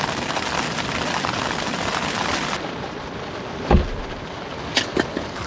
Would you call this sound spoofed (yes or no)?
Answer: no